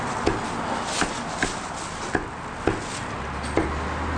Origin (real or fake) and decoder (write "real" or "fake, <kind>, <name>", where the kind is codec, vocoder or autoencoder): real